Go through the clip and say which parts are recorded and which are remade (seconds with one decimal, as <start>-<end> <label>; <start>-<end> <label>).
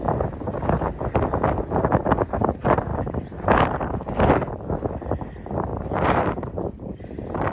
0.0-2.9 recorded; 2.9-3.6 remade; 3.6-5.7 recorded; 5.7-7.0 remade; 7.0-7.5 recorded